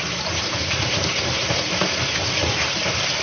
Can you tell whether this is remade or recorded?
remade